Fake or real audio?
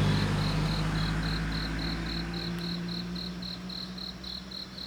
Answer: real